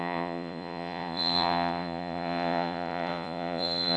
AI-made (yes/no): yes